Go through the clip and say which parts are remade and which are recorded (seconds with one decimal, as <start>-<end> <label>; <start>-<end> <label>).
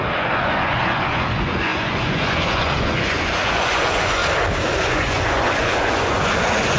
0.0-4.2 remade; 4.2-4.8 recorded; 4.8-6.8 remade